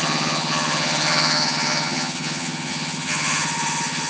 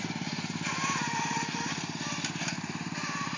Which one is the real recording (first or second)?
second